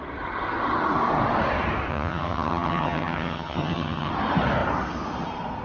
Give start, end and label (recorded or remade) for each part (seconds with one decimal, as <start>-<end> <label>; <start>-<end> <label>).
0.0-1.9 recorded; 1.9-4.1 remade; 4.1-5.6 recorded

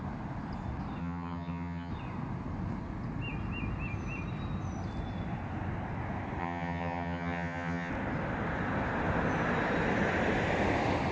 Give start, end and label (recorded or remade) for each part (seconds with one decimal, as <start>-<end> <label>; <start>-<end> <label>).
0.0-1.0 recorded; 1.0-1.9 remade; 1.9-6.4 recorded; 6.4-7.9 remade; 7.9-11.1 recorded

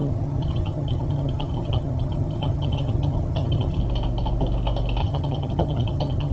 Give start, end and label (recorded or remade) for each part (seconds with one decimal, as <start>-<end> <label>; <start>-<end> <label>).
0.0-3.8 remade; 3.8-5.0 recorded; 5.0-6.3 remade

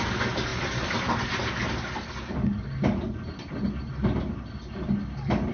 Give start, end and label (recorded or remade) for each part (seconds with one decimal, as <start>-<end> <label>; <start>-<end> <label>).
0.0-5.5 recorded